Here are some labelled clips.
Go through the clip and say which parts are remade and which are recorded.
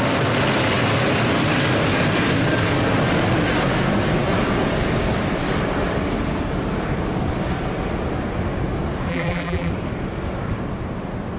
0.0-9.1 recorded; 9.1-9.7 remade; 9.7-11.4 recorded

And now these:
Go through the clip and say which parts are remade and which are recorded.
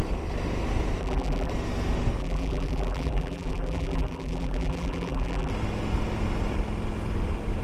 0.0-1.0 recorded; 1.0-1.5 remade; 1.5-2.2 recorded; 2.2-5.5 remade; 5.5-7.6 recorded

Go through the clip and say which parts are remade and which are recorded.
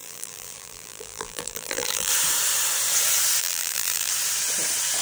0.0-2.1 remade; 2.1-3.4 recorded; 3.4-4.1 remade; 4.1-5.0 recorded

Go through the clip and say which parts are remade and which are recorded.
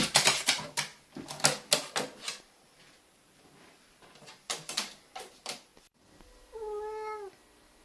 0.0-0.9 remade; 0.9-2.4 recorded; 2.4-5.7 remade; 5.7-7.8 recorded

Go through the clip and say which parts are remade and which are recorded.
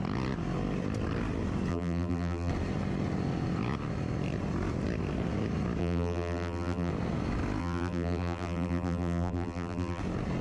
0.0-1.7 recorded; 1.7-2.5 remade; 2.5-5.8 recorded; 5.8-6.9 remade; 6.9-7.6 recorded; 7.6-10.0 remade; 10.0-10.4 recorded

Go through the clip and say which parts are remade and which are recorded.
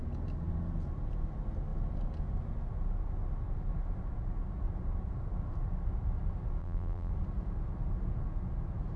0.0-6.6 recorded; 6.6-7.1 remade; 7.1-9.0 recorded